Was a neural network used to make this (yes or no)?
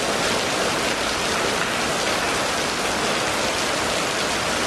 no